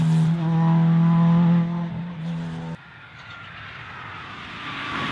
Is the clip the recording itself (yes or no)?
yes